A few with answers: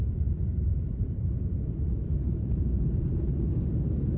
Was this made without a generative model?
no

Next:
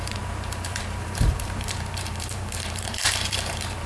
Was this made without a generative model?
no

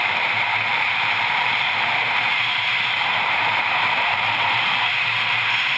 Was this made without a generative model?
no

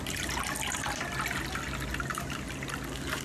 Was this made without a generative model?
yes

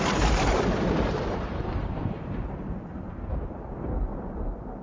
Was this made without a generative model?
no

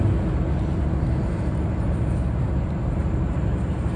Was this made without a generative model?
no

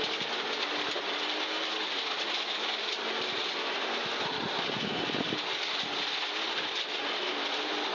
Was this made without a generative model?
yes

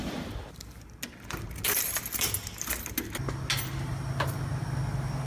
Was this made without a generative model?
yes